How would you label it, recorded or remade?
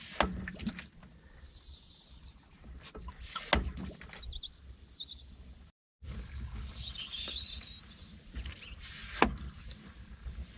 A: recorded